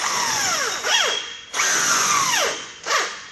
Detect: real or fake fake